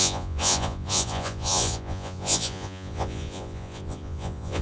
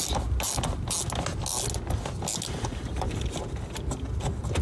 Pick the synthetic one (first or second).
first